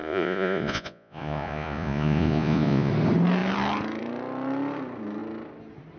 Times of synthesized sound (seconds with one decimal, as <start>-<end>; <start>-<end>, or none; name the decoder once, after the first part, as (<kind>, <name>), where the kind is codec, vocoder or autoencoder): 0.0-2.9 (vocoder, Vocos)